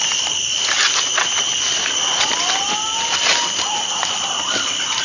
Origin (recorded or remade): recorded